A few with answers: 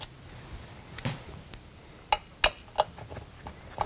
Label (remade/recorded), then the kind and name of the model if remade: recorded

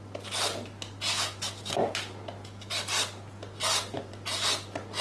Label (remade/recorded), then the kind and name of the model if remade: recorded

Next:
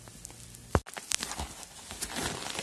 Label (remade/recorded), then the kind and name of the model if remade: recorded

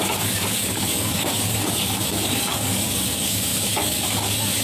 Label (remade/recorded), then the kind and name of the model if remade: remade, codec, DAC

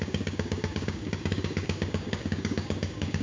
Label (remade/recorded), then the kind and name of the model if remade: remade, codec, DAC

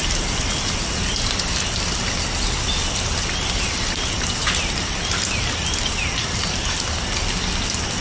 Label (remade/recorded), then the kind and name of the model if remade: recorded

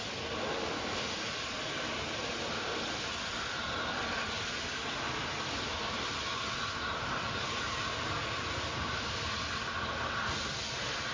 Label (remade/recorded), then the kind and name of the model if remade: recorded